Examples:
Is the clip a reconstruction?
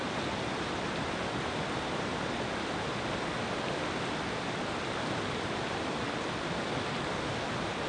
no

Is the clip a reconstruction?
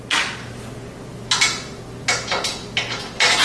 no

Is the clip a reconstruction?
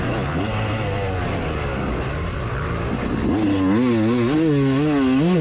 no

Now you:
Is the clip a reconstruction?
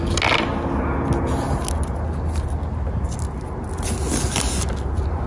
no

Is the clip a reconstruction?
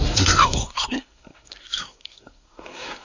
yes